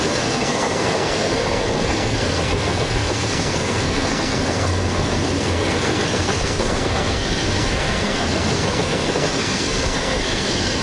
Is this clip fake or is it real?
fake